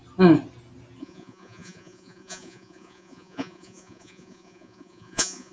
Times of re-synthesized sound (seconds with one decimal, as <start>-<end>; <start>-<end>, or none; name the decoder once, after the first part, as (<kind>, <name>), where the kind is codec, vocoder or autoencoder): 1.0-5.5 (vocoder, Vocos)